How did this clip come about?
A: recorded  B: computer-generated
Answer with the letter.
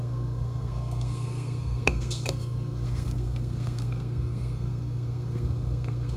B